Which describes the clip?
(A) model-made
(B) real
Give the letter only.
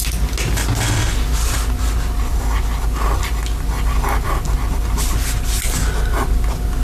B